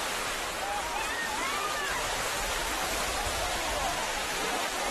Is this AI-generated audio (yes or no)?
yes